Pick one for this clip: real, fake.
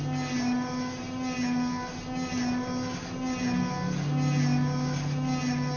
real